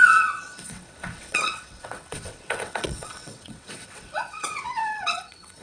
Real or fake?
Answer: fake